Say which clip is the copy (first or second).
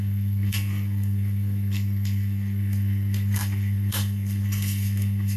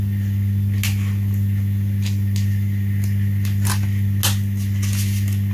first